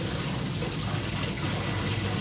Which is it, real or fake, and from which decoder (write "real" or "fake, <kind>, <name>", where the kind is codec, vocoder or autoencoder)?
real